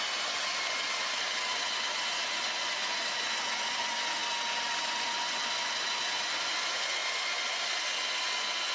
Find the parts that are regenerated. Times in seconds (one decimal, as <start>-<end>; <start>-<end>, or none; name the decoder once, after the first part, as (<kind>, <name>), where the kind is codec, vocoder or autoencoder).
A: 0.0-4.2 (vocoder, Vocos); 4.8-8.7